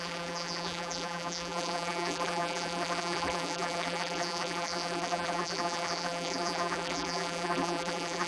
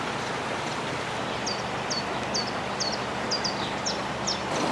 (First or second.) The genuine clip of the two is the second